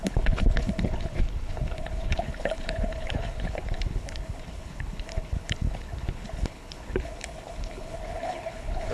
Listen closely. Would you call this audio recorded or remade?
remade